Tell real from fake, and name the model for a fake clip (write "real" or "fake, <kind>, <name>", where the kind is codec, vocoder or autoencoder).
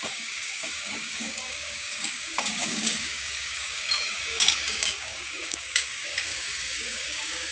fake, codec, DAC